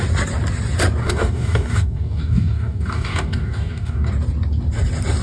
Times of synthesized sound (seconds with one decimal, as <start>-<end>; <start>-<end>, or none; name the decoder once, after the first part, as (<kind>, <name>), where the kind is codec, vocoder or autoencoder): 1.0-4.1 (codec, DAC)